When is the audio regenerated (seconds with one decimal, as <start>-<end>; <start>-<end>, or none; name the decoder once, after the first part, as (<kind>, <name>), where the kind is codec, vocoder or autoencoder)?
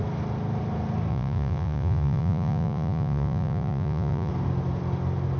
1.1-4.3 (vocoder, Vocos)